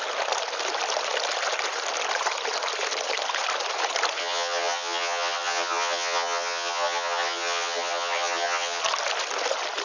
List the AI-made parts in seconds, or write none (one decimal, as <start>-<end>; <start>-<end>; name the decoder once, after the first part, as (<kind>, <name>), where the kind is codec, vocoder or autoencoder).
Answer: 4.2-8.8 (vocoder, HiFi-GAN)